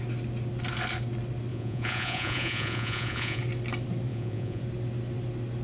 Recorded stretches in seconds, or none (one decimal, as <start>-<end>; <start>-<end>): 0.0-1.5; 3.4-4.1; 4.6-5.6